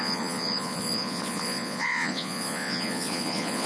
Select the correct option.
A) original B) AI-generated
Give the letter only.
B